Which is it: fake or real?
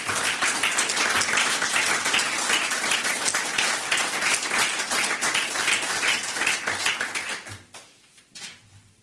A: real